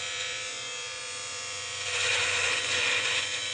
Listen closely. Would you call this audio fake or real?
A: fake